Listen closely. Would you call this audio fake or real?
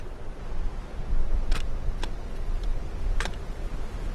real